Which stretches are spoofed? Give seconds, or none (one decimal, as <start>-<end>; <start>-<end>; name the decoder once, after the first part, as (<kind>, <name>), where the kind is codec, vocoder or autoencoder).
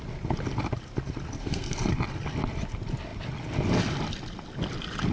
1.4-1.9 (codec, SNAC)